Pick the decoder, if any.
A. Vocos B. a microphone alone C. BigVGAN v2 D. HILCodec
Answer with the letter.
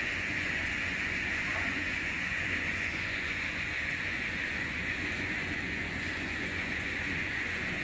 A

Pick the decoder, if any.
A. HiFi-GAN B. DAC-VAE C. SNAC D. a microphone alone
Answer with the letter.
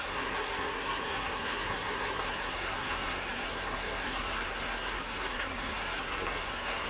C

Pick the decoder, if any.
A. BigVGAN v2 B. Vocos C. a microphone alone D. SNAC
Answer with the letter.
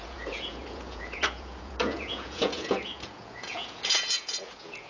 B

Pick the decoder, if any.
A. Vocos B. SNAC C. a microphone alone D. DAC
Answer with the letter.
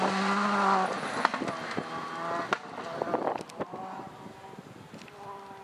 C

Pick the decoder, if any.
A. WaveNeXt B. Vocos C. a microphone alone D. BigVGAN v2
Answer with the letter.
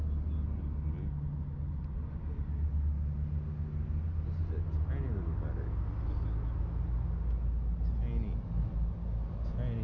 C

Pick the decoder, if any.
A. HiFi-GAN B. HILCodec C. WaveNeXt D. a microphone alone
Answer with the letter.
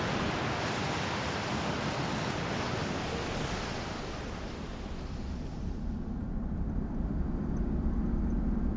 D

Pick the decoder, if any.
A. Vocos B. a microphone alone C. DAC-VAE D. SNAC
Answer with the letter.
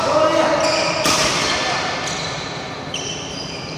B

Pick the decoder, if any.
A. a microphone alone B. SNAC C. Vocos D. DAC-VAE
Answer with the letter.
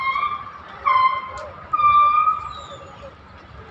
A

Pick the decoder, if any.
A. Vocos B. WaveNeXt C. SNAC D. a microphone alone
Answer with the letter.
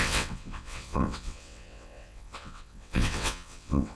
B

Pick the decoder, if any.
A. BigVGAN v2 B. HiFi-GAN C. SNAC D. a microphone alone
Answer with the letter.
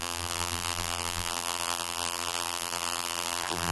A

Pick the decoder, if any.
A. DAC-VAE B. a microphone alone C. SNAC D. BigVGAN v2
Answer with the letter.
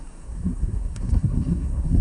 C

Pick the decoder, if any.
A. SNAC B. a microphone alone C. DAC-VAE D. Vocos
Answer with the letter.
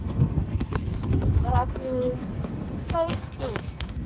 A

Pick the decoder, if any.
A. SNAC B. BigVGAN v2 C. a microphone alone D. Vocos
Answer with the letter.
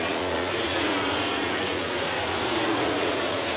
D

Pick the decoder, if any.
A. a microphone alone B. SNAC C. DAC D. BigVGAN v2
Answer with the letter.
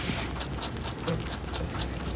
A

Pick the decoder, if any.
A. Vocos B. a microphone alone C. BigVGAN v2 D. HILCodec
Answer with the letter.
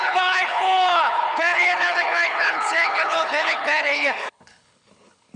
D